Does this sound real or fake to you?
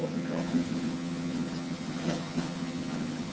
fake